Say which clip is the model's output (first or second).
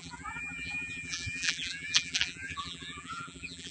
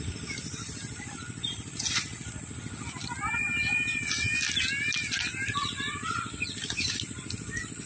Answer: first